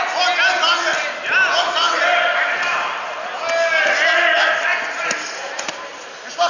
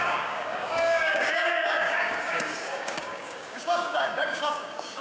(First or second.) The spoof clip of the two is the second